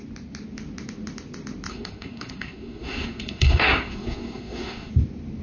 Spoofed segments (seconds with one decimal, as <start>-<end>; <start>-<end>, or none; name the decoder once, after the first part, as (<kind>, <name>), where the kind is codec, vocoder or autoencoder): 1.7-4.9 (codec, SNAC)